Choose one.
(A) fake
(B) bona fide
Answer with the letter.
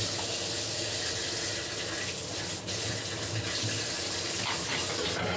B